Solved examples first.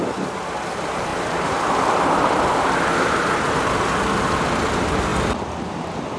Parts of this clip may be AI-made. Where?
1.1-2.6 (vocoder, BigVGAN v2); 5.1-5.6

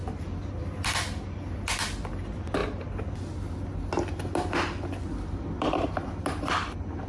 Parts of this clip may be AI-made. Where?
0.0-0.6 (vocoder, BigVGAN v2)

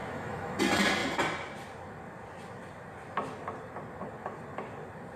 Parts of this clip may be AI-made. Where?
0.0-0.6 (autoencoder, DAC-VAE)